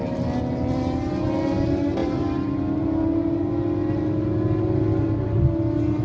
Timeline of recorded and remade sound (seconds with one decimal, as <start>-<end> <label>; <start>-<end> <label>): 0.0-6.0 recorded

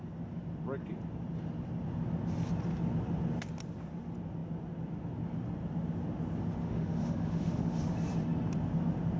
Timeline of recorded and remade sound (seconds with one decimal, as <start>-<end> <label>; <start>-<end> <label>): 0.0-6.6 recorded; 6.6-7.8 remade; 7.8-9.2 recorded

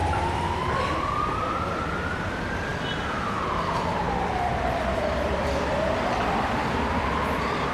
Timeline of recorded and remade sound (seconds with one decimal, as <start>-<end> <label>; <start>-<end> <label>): 0.0-7.7 remade

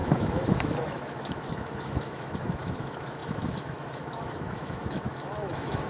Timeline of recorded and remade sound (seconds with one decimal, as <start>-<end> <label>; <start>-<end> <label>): 0.0-5.9 remade

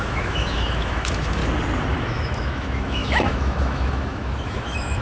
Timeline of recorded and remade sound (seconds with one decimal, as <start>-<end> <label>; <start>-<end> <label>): 0.0-1.4 remade; 1.4-2.0 recorded; 2.0-5.0 remade

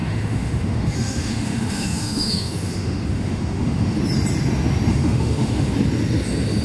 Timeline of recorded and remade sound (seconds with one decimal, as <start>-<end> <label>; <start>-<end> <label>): 0.0-4.0 remade; 4.0-4.9 recorded; 4.9-5.7 remade; 5.7-6.6 recorded

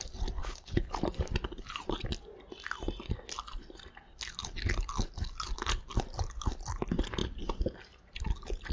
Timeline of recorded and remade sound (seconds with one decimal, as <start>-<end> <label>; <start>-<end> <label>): 0.0-0.4 recorded; 0.4-0.9 remade; 0.9-8.7 recorded

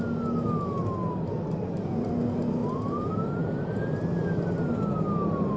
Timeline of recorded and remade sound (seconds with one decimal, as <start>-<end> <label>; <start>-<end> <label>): 0.0-2.6 recorded; 2.6-3.8 remade; 3.8-5.6 recorded